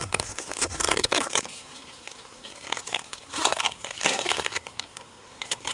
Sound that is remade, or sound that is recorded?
remade